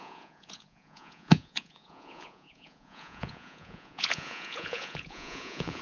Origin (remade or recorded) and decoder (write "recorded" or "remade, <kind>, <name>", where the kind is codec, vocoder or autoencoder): remade, vocoder, Vocos